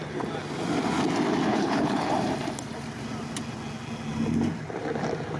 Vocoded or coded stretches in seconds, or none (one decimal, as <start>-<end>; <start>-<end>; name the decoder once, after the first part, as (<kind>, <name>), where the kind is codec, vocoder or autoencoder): 1.5-2.1 (codec, HILCodec)